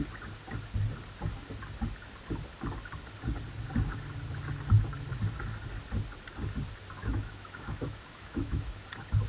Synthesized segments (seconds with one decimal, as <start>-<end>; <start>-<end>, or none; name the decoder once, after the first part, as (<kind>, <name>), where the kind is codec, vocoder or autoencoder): 7.0-8.8 (autoencoder, DAC-VAE)